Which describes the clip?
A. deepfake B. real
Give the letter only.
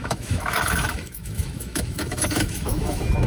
A